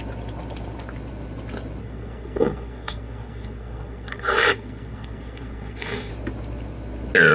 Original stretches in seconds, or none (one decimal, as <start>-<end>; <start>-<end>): 0.0-1.8; 6.1-7.3